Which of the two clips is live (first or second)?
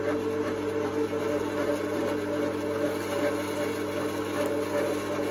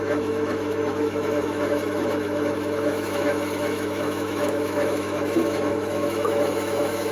first